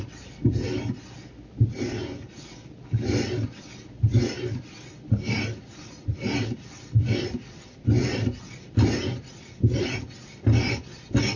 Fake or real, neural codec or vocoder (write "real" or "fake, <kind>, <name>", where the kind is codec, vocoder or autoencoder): real